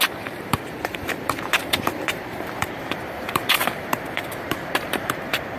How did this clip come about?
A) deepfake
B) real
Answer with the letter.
A